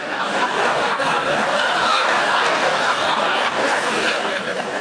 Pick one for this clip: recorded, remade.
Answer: remade